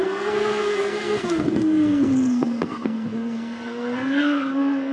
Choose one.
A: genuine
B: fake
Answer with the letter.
B